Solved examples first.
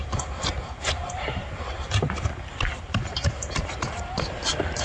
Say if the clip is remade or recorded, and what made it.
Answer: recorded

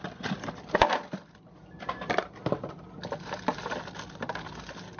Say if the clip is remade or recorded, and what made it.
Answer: recorded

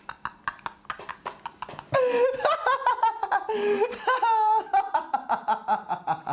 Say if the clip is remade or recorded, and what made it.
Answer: recorded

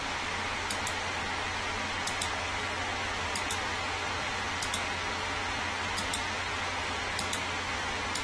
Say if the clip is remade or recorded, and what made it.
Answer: recorded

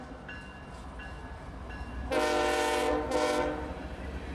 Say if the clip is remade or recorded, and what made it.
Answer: recorded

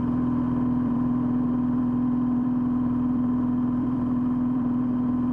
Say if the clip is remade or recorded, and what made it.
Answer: remade, vocoder, BigVGAN v2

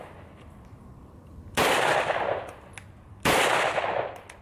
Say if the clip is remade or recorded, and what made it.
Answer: recorded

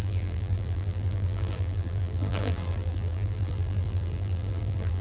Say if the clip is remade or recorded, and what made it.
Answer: remade, vocoder, BigVGAN v2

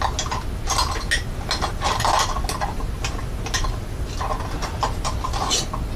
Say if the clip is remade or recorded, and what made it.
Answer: recorded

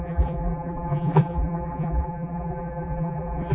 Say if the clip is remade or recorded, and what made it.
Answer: remade, vocoder, BigVGAN v2